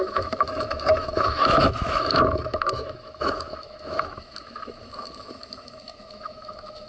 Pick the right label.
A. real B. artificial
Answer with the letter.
B